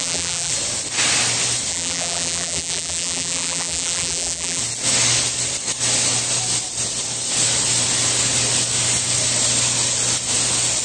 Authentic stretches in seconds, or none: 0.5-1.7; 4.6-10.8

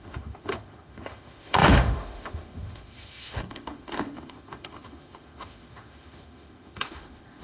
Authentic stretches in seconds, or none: none

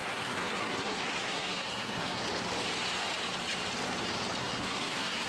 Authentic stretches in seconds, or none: 2.2-4.4

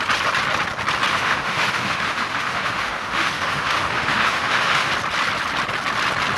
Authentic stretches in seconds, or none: 0.0-1.1; 4.9-6.4

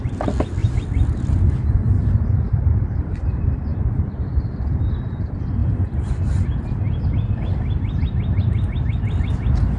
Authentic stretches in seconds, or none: 0.0-9.8

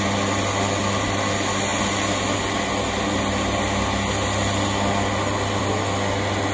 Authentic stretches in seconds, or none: 0.0-6.5

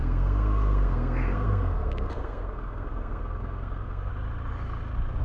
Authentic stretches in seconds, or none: 4.1-5.2